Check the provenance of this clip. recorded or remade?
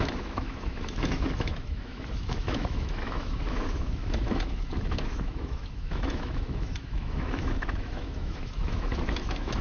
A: remade